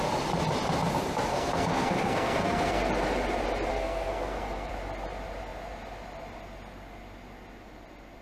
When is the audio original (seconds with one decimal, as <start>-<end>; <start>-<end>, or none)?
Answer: 0.0-1.3; 2.9-3.7; 4.7-8.2